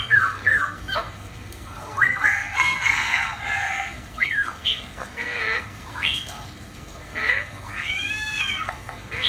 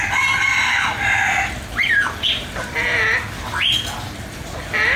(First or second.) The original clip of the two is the second